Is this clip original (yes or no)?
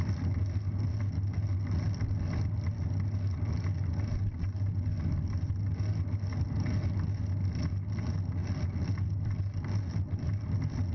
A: yes